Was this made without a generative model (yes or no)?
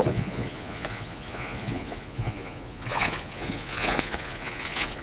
no